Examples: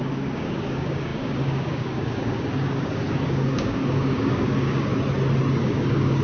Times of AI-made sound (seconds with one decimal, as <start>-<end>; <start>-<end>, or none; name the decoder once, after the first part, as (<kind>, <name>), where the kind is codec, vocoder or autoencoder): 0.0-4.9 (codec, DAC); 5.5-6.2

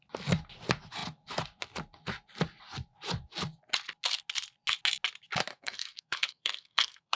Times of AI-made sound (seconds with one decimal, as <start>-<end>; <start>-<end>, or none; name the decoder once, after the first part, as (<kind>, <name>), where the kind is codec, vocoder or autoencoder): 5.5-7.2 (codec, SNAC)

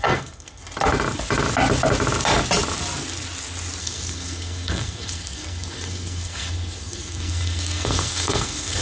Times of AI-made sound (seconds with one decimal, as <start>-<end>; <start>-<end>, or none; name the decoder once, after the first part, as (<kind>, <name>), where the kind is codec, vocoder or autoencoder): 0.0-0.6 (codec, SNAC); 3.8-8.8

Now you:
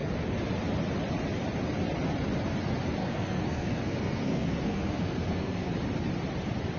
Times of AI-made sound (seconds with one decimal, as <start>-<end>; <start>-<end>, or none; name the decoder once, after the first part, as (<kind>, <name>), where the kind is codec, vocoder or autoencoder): 3.0-5.7 (codec, SNAC)